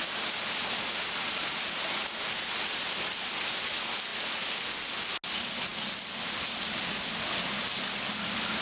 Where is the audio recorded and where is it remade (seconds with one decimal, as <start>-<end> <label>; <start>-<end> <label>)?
0.0-8.6 recorded